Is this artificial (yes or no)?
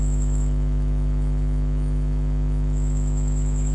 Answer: yes